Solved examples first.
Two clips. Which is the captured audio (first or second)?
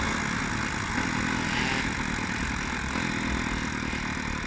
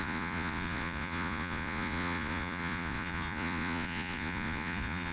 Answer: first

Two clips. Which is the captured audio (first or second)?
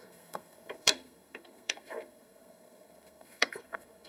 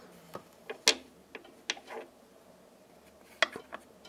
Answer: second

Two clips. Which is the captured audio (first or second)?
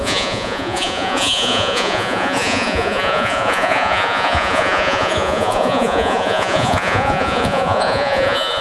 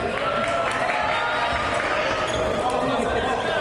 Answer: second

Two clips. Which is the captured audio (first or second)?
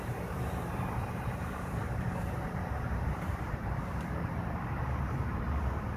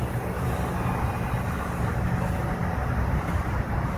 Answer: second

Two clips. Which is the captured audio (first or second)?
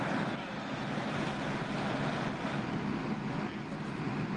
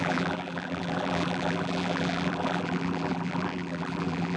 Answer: first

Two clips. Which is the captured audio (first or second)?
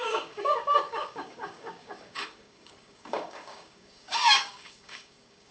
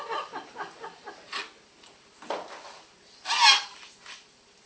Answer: second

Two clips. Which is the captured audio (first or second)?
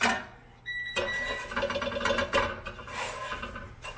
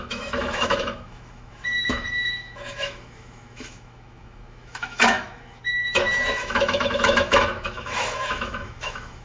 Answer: first